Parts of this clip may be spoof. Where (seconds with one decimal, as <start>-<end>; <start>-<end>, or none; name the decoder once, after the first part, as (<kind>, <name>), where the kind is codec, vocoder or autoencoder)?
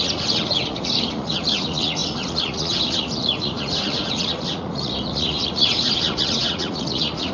0.0-7.3 (vocoder, Vocos)